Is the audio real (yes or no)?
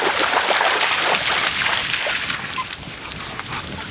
yes